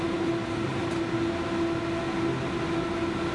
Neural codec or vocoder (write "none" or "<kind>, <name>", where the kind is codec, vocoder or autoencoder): none